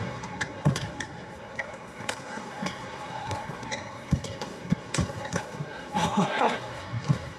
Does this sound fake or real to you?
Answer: fake